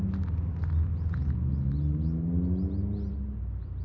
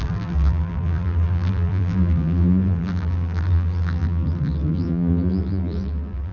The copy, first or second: second